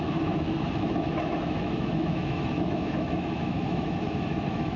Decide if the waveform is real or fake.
fake